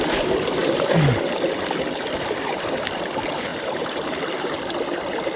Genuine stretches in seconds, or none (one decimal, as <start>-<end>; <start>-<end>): 0.0-5.4